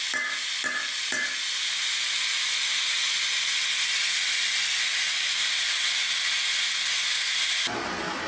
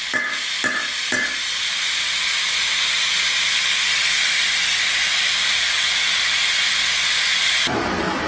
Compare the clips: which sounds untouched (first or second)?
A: first